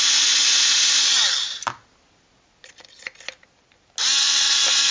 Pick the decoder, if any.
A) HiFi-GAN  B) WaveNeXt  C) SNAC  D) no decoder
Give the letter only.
D